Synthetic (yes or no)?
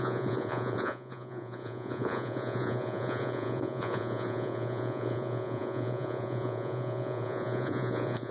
yes